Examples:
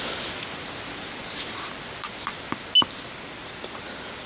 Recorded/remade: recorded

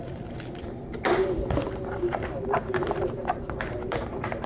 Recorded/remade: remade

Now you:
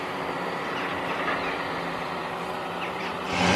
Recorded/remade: remade